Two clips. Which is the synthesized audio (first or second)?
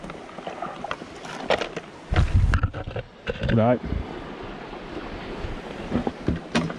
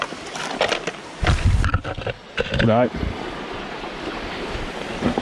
second